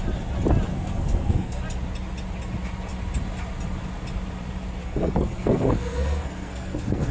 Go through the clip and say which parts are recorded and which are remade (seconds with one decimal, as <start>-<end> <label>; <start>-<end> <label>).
0.0-0.7 recorded; 0.7-1.6 remade; 1.6-4.8 recorded; 4.8-7.1 remade